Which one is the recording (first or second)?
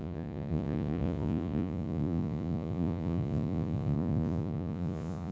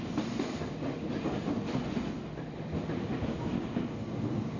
second